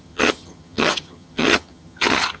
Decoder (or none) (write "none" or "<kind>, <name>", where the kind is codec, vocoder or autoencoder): vocoder, HiFi-GAN